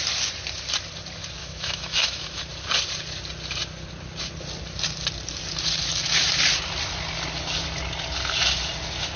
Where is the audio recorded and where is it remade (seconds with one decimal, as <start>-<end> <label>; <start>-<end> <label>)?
0.0-1.4 recorded; 1.4-2.4 remade; 2.4-9.2 recorded